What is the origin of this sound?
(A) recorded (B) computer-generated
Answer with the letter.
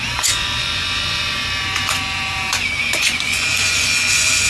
B